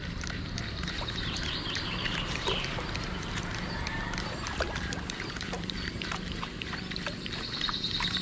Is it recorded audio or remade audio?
remade